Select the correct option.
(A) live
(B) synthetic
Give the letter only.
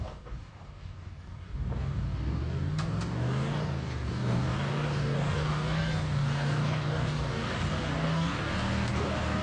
B